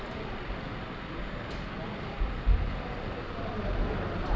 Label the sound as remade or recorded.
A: recorded